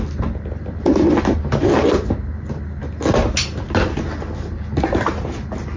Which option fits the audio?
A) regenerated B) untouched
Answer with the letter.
B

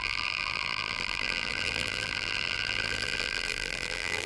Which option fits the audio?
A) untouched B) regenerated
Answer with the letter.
B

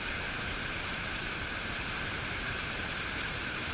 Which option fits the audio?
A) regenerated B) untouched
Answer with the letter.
A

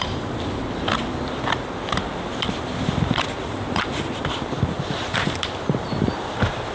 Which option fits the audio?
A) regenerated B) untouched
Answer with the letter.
A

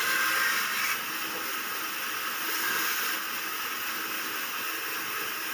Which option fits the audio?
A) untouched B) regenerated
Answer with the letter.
A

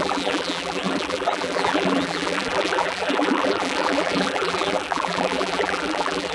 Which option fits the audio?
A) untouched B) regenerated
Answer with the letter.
B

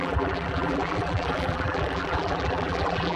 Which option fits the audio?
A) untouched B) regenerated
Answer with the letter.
B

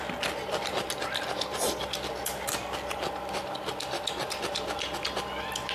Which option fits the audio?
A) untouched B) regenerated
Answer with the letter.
A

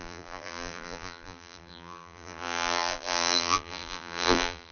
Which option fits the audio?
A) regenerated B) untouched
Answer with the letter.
A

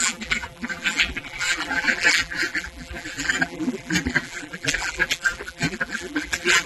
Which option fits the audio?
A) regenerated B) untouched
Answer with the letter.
A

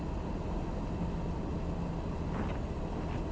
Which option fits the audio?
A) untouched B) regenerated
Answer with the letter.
A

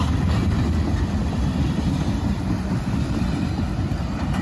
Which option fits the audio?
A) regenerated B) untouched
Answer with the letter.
A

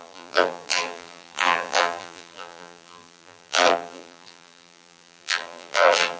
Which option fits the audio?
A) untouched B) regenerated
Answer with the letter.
B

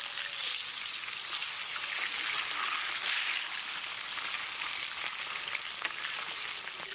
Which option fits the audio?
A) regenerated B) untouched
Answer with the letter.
B